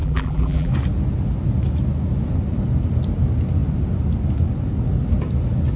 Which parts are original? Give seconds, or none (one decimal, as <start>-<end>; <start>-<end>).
0.7-5.8